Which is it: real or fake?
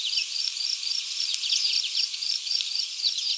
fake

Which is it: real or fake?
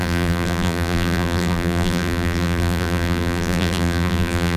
fake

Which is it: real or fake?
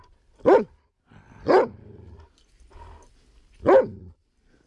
real